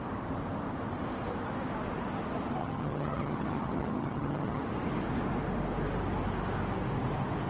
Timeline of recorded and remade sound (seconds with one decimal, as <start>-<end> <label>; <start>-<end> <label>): 0.0-2.6 recorded; 2.6-4.6 remade; 4.6-7.5 recorded